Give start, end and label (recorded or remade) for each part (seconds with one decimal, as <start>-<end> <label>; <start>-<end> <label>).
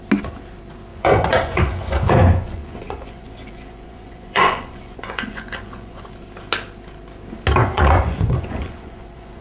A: 0.0-0.9 recorded; 0.9-6.1 remade; 6.1-7.6 recorded; 7.6-9.4 remade